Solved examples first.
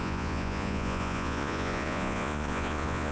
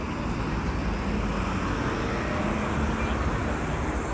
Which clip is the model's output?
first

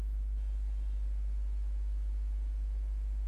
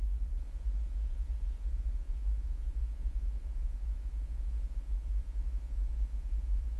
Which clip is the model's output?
second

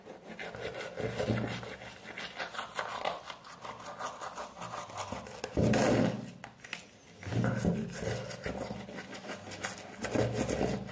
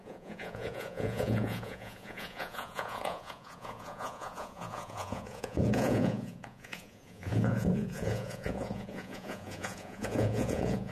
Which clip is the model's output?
second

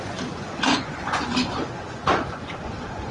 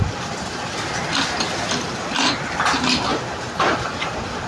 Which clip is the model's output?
first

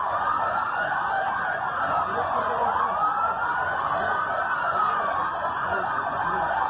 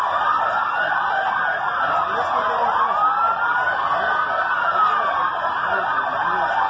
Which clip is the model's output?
first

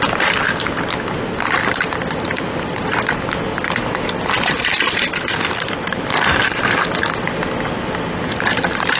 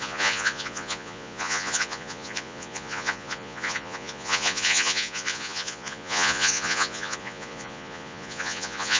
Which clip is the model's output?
second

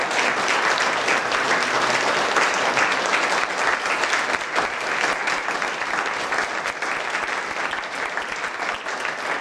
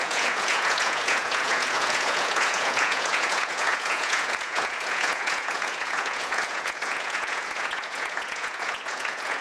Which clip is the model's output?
second